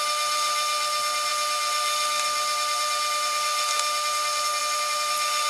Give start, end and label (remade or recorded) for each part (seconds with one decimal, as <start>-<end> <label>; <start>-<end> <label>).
0.0-5.5 recorded